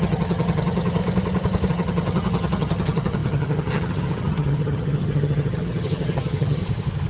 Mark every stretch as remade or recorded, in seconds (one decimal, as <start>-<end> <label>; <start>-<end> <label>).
0.0-1.0 remade; 1.0-1.7 recorded; 1.7-6.6 remade; 6.6-7.1 recorded